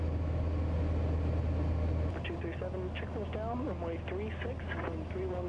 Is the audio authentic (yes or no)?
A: yes